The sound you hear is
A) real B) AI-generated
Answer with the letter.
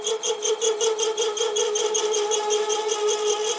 A